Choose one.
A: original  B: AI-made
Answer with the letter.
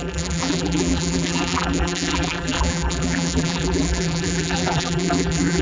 B